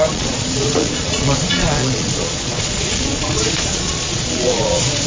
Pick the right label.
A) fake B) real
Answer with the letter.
A